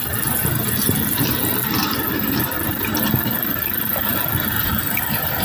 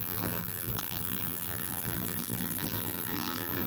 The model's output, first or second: second